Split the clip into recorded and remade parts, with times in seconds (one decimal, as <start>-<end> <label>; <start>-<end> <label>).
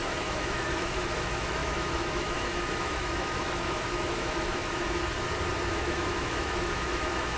0.0-5.0 remade; 5.0-5.7 recorded; 5.7-7.4 remade